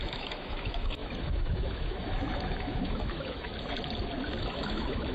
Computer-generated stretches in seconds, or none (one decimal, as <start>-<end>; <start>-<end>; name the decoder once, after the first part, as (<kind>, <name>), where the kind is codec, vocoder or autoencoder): 0.0-3.5 (autoencoder, DAC-VAE); 4.4-5.1